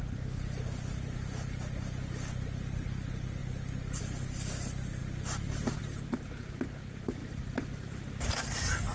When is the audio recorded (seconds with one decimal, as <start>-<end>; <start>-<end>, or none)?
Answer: 0.0-3.4; 4.0-7.2; 8.3-8.9